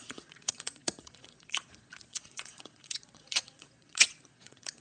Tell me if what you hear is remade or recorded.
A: remade